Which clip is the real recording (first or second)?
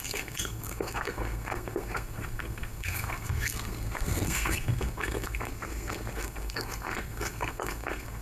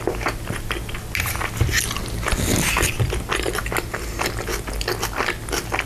second